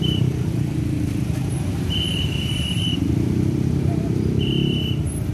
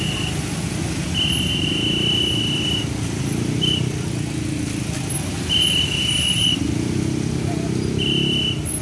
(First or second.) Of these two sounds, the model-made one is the first